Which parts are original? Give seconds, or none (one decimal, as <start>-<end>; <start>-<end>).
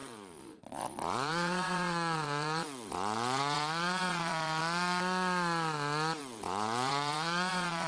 4.6-6.2